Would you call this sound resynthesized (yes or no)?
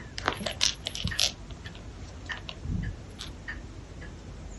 no